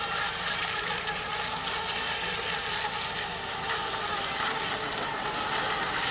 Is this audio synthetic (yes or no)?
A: no